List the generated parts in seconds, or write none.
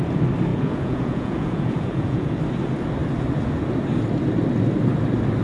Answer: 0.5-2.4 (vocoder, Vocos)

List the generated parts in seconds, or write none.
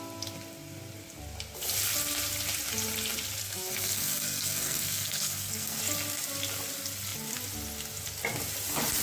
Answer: 3.4-5.8 (codec, SNAC)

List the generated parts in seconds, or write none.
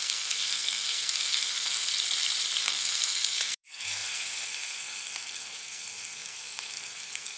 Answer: 0.0-1.9 (codec, SNAC); 2.6-7.4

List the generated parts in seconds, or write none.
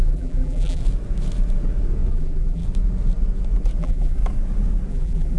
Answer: 0.0-0.8 (vocoder, BigVGAN v2); 2.1-2.6; 3.8-4.2; 4.9-5.4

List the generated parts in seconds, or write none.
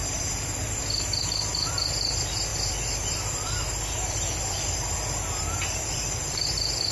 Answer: 0.0-1.3 (vocoder, BigVGAN v2); 2.5-6.5